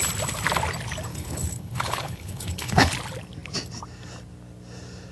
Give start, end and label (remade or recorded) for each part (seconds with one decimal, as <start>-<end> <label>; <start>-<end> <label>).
0.0-1.1 recorded; 1.1-2.9 remade; 2.9-5.1 recorded